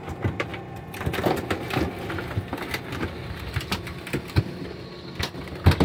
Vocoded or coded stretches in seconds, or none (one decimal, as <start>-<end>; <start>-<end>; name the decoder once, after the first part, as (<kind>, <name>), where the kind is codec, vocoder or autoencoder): none